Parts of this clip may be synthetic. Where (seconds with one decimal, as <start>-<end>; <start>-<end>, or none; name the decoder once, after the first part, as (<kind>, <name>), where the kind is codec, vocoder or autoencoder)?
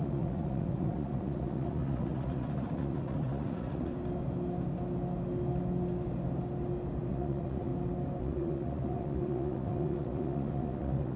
0.0-3.9 (vocoder, Vocos); 7.1-7.7; 8.2-11.2